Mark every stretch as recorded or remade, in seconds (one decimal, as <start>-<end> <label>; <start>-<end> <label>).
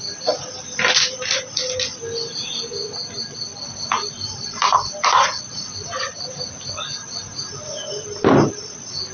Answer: 0.0-3.5 recorded; 3.5-6.6 remade; 6.6-9.1 recorded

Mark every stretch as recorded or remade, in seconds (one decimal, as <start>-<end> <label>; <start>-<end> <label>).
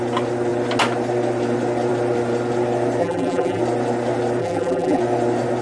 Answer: 0.0-3.0 recorded; 3.0-3.6 remade; 3.6-4.4 recorded; 4.4-5.0 remade; 5.0-5.6 recorded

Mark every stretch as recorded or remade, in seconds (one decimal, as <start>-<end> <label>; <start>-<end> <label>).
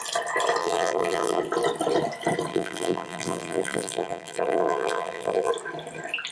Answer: 0.0-0.6 recorded; 0.6-1.4 remade; 1.4-2.5 recorded; 2.5-5.5 remade; 5.5-6.3 recorded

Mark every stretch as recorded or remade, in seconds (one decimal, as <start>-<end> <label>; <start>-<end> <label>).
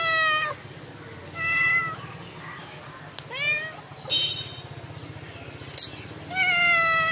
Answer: 0.0-7.1 recorded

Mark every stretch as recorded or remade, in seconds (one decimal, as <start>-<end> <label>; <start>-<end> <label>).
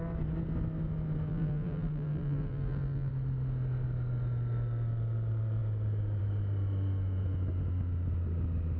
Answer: 0.0-1.3 recorded; 1.3-3.1 remade; 3.1-8.8 recorded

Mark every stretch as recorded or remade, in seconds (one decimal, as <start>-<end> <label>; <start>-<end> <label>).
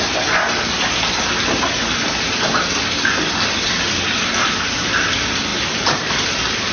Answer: 0.0-5.5 recorded; 5.5-6.1 remade; 6.1-6.7 recorded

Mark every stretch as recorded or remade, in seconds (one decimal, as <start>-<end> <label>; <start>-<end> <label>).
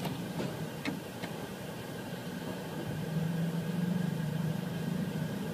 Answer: 0.0-1.5 remade; 1.5-2.1 recorded; 2.1-5.5 remade